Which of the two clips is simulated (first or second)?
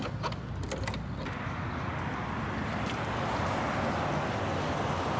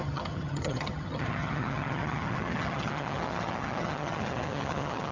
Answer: second